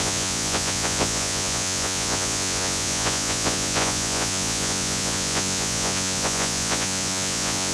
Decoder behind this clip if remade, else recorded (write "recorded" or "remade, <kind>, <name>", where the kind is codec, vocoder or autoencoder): remade, vocoder, Vocos